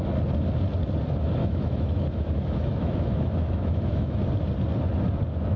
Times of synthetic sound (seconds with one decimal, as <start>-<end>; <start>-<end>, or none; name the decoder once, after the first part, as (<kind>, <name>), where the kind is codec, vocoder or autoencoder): 1.4-4.2 (autoencoder, DAC-VAE)